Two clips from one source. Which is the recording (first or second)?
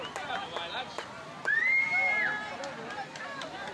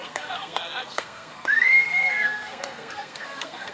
first